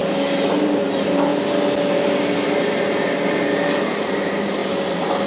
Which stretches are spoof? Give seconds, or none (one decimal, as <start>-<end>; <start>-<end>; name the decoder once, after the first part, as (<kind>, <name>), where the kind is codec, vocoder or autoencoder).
0.6-1.3 (vocoder, BigVGAN v2); 3.9-5.3